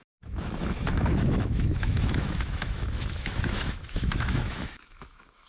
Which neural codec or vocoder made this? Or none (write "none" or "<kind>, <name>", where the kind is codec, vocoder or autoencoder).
autoencoder, DAC-VAE